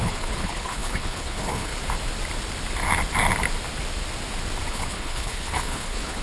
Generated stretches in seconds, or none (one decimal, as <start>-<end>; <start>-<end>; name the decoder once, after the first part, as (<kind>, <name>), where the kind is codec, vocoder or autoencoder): 0.0-1.7 (codec, HILCodec); 4.7-6.2